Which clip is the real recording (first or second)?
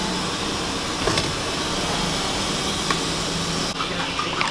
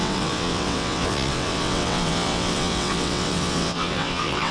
first